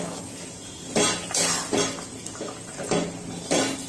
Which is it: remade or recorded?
recorded